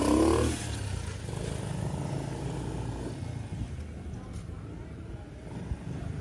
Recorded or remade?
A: recorded